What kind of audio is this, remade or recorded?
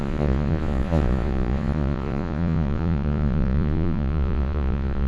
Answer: remade